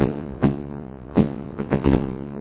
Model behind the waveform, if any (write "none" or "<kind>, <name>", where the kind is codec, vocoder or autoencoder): vocoder, WaveNeXt